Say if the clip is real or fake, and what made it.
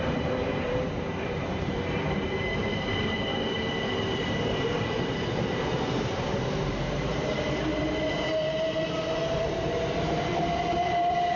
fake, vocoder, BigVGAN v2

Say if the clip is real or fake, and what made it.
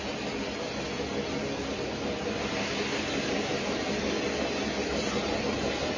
real